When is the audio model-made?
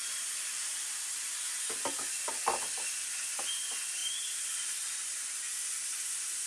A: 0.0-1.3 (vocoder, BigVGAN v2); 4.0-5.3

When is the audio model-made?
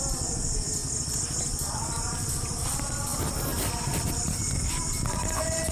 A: 0.0-0.8 (vocoder, BigVGAN v2); 1.7-5.7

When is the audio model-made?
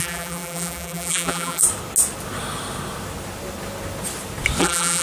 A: 0.0-1.6 (vocoder, BigVGAN v2); 4.6-5.0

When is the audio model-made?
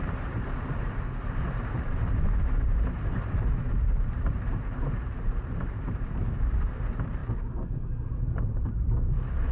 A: 0.0-7.2 (vocoder, BigVGAN v2); 8.2-9.5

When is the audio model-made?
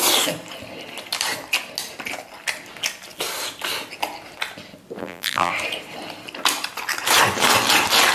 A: 5.0-5.5 (vocoder, BigVGAN v2)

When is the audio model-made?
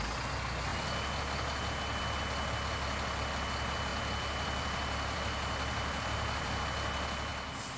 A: 3.9-6.6 (vocoder, BigVGAN v2)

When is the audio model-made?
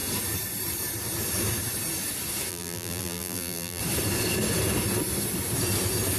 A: 2.5-3.8 (vocoder, BigVGAN v2)